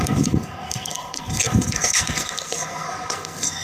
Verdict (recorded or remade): remade